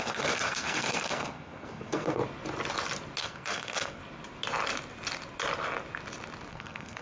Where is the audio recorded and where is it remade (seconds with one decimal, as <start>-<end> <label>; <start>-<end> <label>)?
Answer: 0.0-2.2 remade; 2.2-3.2 recorded; 3.2-4.0 remade; 4.0-6.5 recorded; 6.5-7.0 remade